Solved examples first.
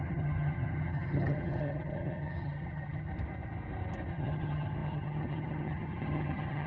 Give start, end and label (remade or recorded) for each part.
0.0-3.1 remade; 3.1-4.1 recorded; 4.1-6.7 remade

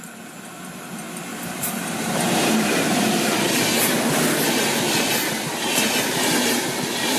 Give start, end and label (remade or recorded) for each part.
0.0-1.3 recorded; 1.3-3.4 remade; 3.4-7.2 recorded

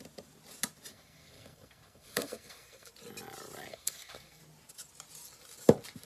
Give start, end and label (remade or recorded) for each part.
0.0-0.9 recorded; 0.9-2.9 remade; 2.9-3.7 recorded; 3.7-4.4 remade; 4.4-6.0 recorded

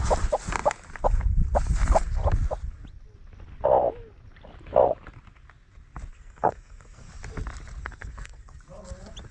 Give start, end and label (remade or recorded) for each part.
0.0-6.1 recorded; 6.1-7.1 remade; 7.1-7.8 recorded; 7.8-8.6 remade; 8.6-9.3 recorded

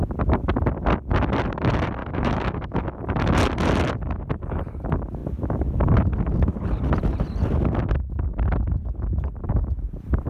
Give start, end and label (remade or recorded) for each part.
0.0-2.0 recorded; 2.0-3.0 remade; 3.0-10.3 recorded

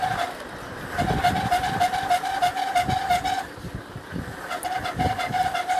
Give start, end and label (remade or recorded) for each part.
0.0-5.8 recorded

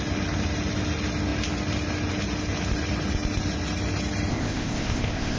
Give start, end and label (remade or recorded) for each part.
0.0-4.3 recorded; 4.3-5.4 remade

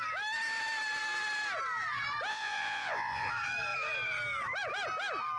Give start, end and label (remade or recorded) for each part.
0.0-2.3 recorded; 2.3-3.3 remade; 3.3-5.4 recorded